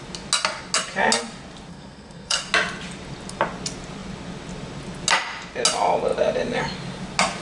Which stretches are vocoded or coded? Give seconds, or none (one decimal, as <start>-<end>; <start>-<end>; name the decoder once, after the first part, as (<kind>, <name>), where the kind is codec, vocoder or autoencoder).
1.7-2.4 (codec, SNAC)